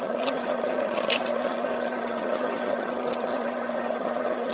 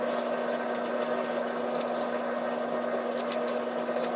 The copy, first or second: first